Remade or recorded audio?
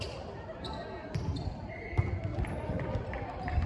remade